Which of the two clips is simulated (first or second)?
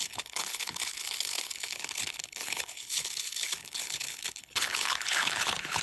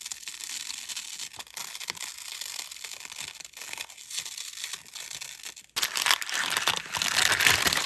first